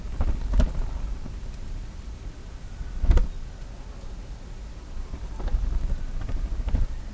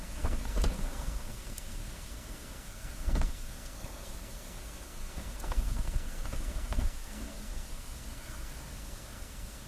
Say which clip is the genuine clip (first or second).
first